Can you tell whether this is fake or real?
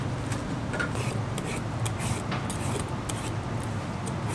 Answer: real